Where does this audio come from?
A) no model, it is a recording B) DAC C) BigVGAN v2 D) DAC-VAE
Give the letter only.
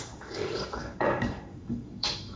B